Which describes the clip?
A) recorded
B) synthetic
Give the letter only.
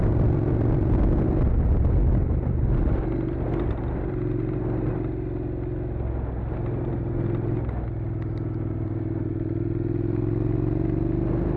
A